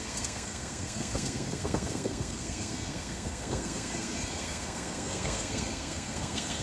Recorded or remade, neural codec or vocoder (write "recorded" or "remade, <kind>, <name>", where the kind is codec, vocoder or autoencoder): remade, codec, SNAC